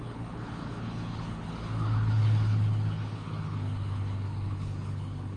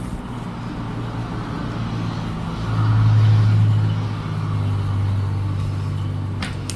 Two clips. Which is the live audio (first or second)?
second